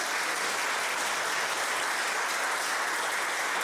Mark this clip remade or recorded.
recorded